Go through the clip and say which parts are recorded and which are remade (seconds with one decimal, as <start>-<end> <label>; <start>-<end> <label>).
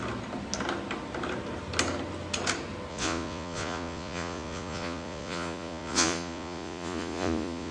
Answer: 0.0-2.9 recorded; 2.9-7.7 remade